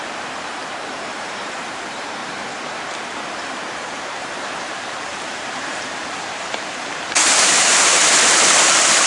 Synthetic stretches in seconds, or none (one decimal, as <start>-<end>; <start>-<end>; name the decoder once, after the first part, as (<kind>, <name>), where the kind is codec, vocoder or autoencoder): 0.0-0.6 (vocoder, BigVGAN v2); 1.1-8.0